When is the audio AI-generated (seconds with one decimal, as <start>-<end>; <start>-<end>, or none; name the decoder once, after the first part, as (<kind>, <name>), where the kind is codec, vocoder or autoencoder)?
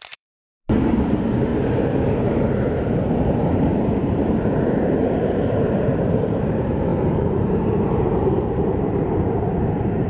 0.0-1.5 (vocoder, BigVGAN v2); 2.2-6.9; 7.5-10.1